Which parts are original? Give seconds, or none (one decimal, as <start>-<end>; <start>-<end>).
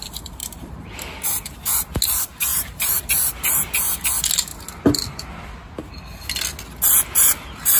0.0-0.4; 1.2-2.5; 3.0-7.8